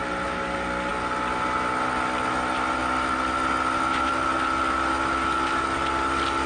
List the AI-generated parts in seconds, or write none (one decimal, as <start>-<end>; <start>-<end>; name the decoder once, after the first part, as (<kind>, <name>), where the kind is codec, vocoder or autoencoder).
none